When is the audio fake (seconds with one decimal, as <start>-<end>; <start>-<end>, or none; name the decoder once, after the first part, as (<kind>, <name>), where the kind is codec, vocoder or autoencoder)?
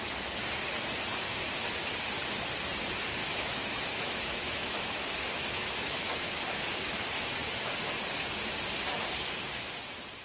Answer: 3.2-6.3 (autoencoder, DAC-VAE)